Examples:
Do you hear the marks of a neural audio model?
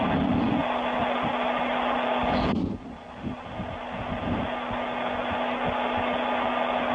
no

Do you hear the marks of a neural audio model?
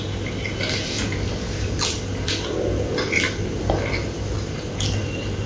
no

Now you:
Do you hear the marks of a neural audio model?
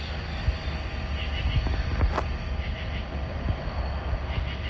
no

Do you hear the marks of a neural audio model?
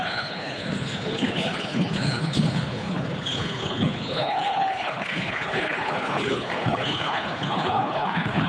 yes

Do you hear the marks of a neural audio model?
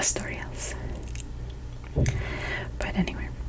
no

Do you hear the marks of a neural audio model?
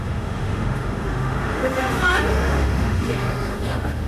yes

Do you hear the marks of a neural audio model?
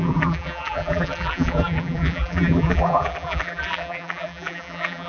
yes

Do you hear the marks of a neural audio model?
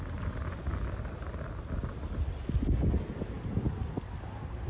no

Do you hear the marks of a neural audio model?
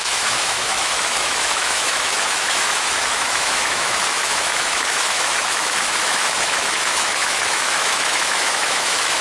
yes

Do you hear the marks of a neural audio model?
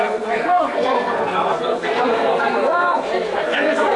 yes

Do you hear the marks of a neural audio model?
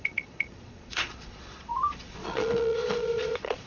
yes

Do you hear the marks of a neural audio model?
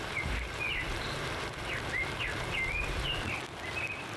no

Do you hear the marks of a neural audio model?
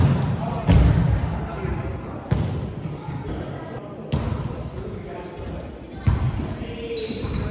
yes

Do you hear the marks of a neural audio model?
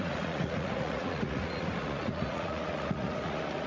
yes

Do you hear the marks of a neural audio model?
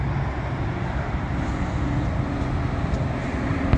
no